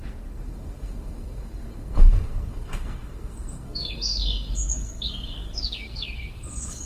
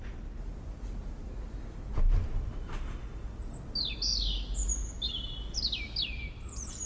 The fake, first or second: first